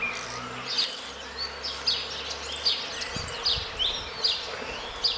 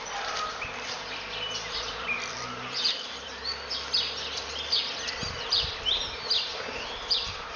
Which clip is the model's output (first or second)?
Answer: second